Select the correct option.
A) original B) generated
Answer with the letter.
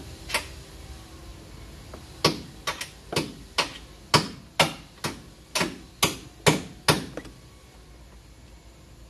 A